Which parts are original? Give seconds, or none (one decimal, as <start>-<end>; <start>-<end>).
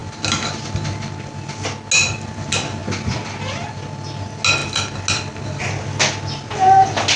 0.0-7.2